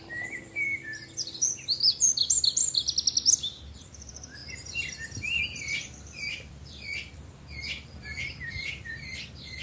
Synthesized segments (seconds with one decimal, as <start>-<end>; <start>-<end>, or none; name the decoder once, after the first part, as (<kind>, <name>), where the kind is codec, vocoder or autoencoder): 0.0-2.6 (vocoder, BigVGAN v2); 3.8-9.6